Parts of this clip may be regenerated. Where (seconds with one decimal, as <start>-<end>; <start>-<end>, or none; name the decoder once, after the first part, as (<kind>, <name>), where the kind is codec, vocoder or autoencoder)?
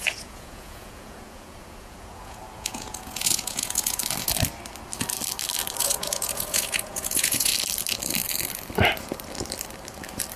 0.0-4.0 (vocoder, Vocos); 5.8-7.5